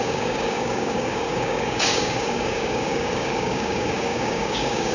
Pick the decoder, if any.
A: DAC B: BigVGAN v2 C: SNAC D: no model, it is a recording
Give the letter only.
A